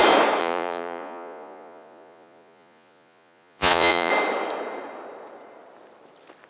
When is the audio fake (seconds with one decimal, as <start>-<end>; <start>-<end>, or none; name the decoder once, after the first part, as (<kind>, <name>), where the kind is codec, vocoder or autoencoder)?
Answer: 0.4-4.1 (vocoder, Vocos)